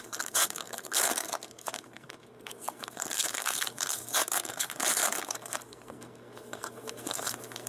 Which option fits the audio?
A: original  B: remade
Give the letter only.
B